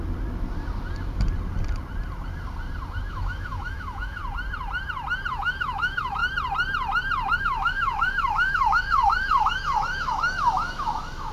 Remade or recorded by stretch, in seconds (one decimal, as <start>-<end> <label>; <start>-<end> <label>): 0.0-3.1 recorded; 3.1-4.2 remade; 4.2-5.3 recorded; 5.3-6.2 remade; 6.2-7.4 recorded; 7.4-11.3 remade